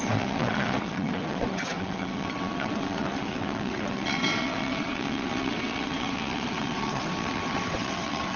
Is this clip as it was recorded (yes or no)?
no